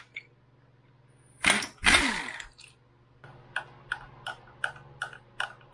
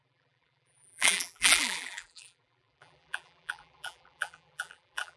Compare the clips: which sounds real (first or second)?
first